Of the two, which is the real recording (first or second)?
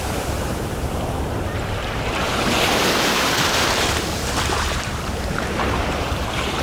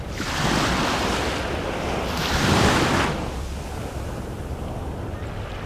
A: second